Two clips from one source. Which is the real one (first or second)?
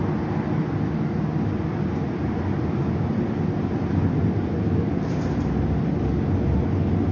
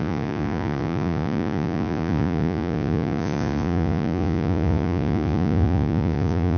first